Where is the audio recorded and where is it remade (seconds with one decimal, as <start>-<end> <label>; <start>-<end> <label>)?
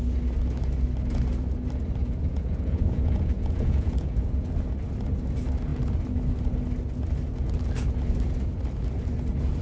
0.0-2.0 recorded; 2.0-4.5 remade; 4.5-9.6 recorded